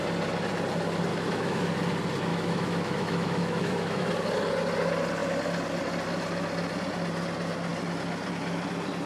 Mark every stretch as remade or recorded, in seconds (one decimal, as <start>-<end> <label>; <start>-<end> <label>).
0.0-1.1 recorded; 1.1-1.7 remade; 1.7-2.3 recorded; 2.3-4.1 remade; 4.1-9.1 recorded